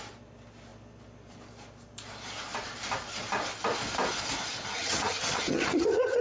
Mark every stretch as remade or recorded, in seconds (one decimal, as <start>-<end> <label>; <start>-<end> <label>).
0.0-4.5 recorded; 4.5-6.2 remade